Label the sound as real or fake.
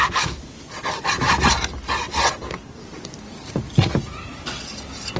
real